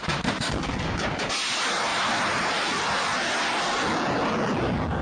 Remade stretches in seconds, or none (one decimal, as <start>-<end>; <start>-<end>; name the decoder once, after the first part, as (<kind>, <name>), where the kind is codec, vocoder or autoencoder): none